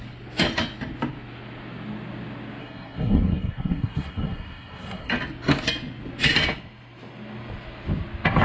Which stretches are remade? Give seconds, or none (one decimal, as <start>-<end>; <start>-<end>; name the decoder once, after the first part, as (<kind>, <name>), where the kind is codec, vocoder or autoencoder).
2.6-5.1 (codec, SNAC)